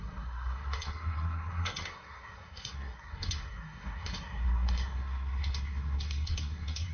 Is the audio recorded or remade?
remade